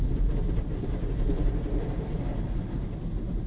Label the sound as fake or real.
real